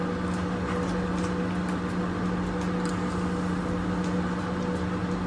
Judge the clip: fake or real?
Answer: real